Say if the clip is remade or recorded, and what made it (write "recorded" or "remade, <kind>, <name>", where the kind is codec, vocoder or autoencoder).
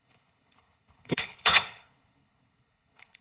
remade, codec, HILCodec